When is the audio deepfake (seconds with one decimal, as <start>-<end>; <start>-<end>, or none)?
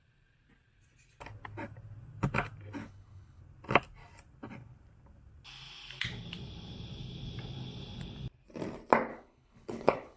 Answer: 2.8-3.4; 9.1-10.2